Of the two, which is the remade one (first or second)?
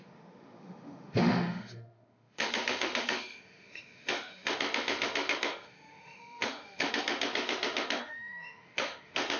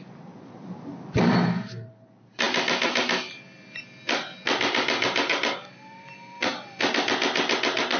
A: first